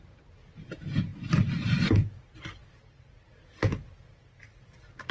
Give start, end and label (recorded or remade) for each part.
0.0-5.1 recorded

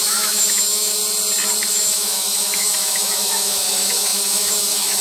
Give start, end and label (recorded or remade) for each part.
0.0-1.0 remade; 1.0-1.7 recorded; 1.7-5.0 remade

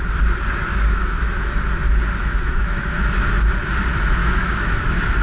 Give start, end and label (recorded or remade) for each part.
0.0-0.7 recorded; 0.7-1.6 remade; 1.6-2.2 recorded; 2.2-2.9 remade; 2.9-4.2 recorded; 4.2-5.2 remade